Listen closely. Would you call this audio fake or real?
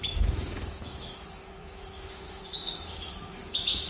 fake